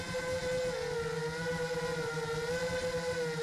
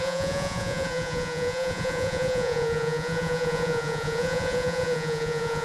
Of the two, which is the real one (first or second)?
first